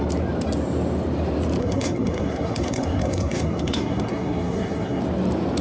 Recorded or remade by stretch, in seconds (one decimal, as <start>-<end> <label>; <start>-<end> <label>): 0.0-1.6 recorded; 1.6-5.0 remade; 5.0-5.6 recorded